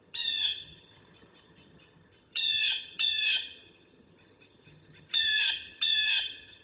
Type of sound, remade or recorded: remade